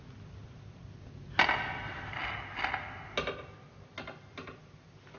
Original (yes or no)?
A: yes